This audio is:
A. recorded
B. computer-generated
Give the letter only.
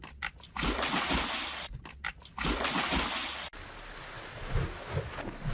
A